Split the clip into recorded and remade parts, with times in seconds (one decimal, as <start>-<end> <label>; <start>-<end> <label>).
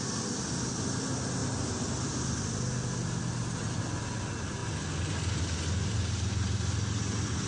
0.0-1.4 recorded; 1.4-2.1 remade; 2.1-7.5 recorded